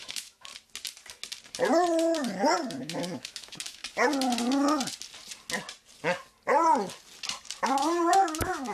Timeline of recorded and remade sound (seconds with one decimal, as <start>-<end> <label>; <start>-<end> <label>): 0.0-0.5 remade; 0.5-2.8 recorded; 2.8-3.8 remade; 3.8-7.6 recorded; 7.6-8.7 remade